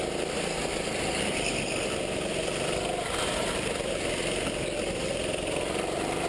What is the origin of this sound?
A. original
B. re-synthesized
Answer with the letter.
A